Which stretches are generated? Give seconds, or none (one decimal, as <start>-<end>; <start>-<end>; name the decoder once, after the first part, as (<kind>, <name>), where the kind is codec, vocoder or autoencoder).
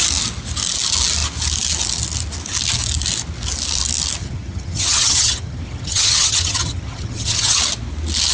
4.2-7.6 (vocoder, HiFi-GAN)